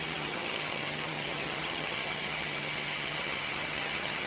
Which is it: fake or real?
fake